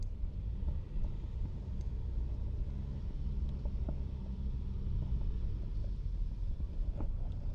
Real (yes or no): yes